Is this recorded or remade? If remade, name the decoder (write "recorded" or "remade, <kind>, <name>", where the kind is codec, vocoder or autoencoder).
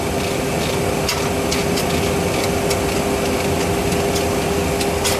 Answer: recorded